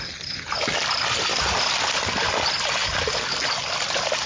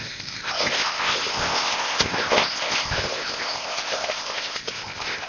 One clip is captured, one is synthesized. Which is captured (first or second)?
first